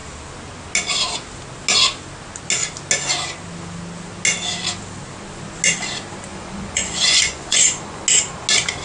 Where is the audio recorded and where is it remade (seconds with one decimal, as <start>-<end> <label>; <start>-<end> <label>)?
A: 0.0-6.3 recorded; 6.3-8.0 remade; 8.0-8.8 recorded